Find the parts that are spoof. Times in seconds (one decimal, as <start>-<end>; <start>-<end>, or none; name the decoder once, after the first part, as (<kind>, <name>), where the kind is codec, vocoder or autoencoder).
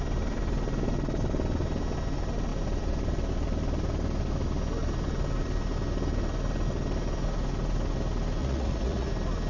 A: 8.4-9.1 (vocoder, Vocos)